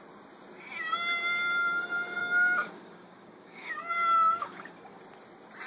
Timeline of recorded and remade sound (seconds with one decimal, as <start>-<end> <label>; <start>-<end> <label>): 0.0-2.2 recorded; 2.2-5.0 remade; 5.0-5.7 recorded